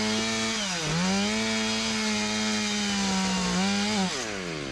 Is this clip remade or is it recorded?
recorded